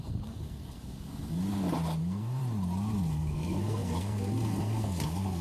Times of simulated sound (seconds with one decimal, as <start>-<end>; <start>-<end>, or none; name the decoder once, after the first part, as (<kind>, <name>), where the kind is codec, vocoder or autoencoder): 0.0-1.4 (codec, SNAC); 2.0-2.4; 3.1-5.4